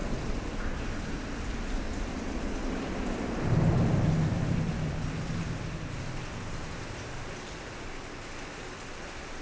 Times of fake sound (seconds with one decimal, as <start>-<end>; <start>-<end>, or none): 0.0-1.0

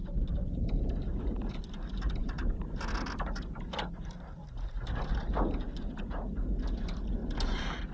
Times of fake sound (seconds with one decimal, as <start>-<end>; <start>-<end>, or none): none

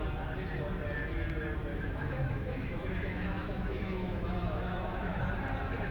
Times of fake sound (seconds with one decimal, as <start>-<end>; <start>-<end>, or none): 1.7-5.2